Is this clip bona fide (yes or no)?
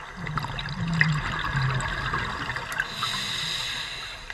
yes